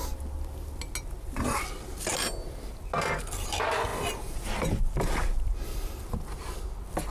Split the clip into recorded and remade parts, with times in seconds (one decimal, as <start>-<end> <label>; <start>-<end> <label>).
0.0-7.1 recorded